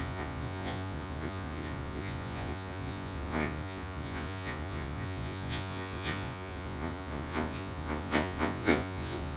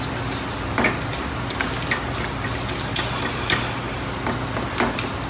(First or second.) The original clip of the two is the second